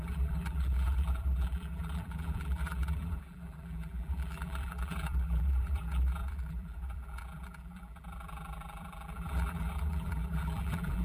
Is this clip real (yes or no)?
no